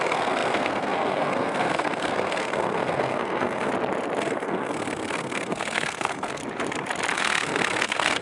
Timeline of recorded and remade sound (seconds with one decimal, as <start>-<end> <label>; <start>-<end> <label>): 0.0-3.7 remade; 3.7-4.2 recorded; 4.2-6.4 remade; 6.4-7.1 recorded; 7.1-8.2 remade